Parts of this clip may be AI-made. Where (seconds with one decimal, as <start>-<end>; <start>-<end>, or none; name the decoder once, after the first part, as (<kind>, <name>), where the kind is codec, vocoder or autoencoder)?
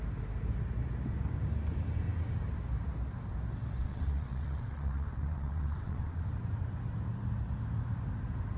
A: 3.8-6.2 (vocoder, WaveNeXt)